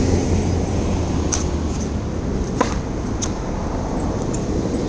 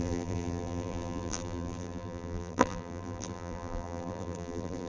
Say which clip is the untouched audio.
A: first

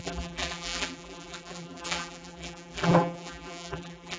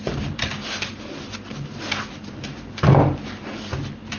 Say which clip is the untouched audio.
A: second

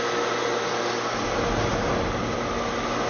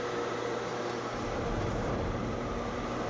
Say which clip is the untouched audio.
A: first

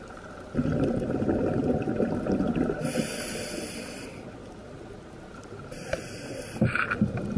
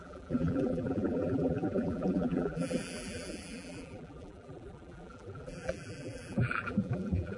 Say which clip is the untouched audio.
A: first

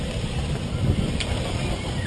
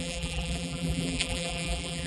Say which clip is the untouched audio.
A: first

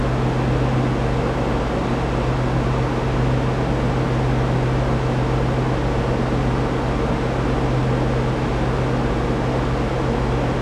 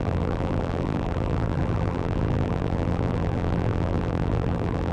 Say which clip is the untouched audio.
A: first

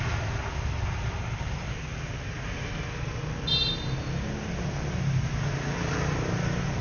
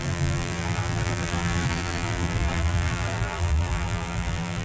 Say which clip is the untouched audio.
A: first